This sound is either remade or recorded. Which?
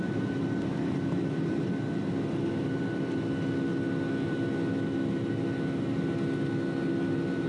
recorded